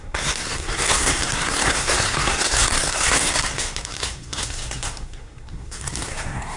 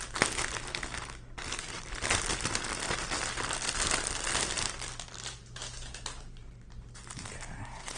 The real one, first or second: second